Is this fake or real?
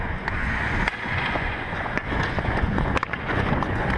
fake